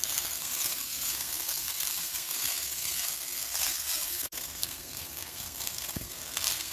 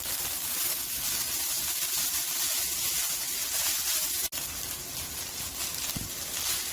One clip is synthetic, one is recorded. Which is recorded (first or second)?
second